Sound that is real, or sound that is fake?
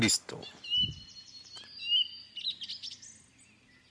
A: real